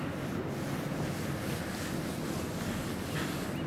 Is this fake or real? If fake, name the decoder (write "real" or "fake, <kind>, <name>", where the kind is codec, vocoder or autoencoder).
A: real